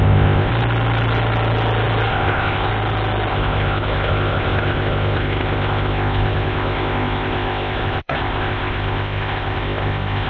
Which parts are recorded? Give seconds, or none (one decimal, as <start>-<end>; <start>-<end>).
0.5-2.1; 2.7-3.3